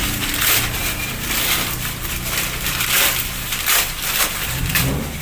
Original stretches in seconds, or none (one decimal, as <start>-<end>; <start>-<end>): 0.0-0.8; 3.9-5.2